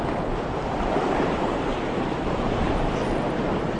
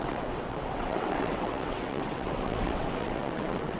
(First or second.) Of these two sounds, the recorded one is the first